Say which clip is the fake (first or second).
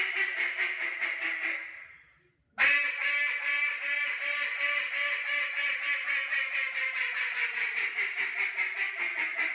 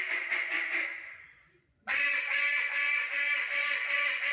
second